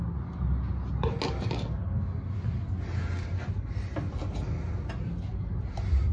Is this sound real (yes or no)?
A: yes